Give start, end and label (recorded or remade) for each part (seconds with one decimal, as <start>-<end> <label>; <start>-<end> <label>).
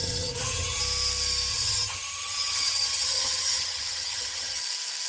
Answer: 0.0-0.8 remade; 0.8-1.5 recorded; 1.5-4.6 remade; 4.6-5.1 recorded